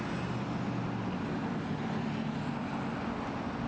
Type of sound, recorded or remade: recorded